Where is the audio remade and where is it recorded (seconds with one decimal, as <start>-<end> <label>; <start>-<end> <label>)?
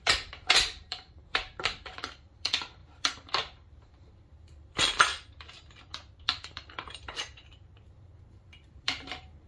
0.0-5.1 remade; 5.1-6.2 recorded; 6.2-9.5 remade